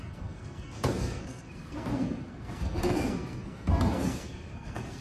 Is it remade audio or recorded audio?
remade